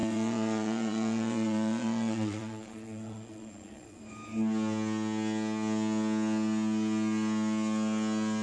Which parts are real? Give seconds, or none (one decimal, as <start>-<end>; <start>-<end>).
4.0-8.4